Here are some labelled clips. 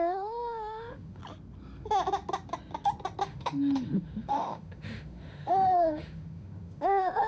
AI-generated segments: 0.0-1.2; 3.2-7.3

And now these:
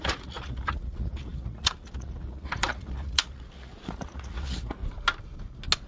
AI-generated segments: 0.0-4.8